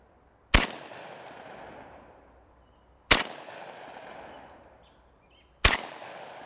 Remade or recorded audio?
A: recorded